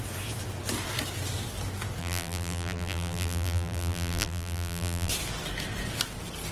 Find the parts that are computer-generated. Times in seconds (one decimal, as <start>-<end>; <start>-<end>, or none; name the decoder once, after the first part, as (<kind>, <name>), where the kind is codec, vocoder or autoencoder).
2.0-5.1 (vocoder, BigVGAN v2)